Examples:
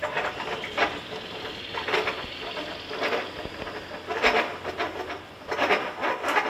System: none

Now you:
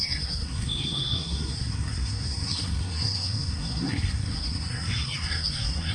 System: codec, SNAC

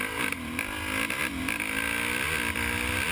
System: none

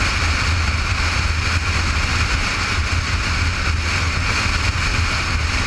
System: none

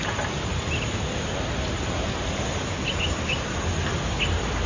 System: none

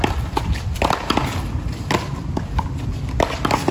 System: none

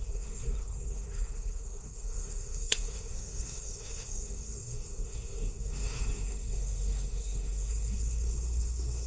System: codec, SNAC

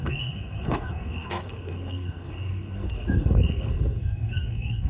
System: codec, SNAC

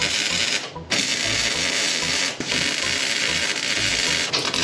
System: none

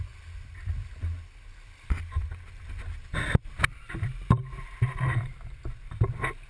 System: none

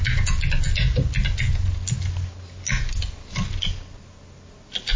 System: none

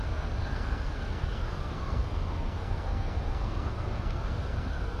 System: codec, SNAC